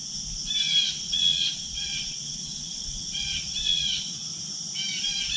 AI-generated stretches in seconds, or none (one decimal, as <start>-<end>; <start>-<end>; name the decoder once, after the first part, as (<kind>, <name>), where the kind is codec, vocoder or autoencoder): 1.0-4.3 (vocoder, WaveNeXt)